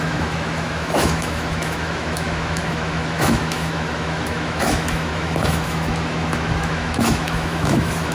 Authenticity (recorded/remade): remade